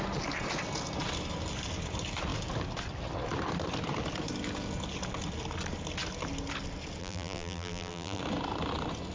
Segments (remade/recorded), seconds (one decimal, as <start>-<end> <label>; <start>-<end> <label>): 0.0-7.0 recorded; 7.0-8.2 remade; 8.2-9.1 recorded